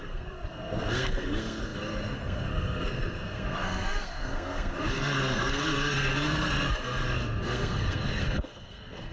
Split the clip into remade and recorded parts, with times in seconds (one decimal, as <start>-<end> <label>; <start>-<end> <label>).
0.0-9.1 remade